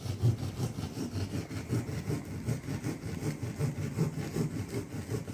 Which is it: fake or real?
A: real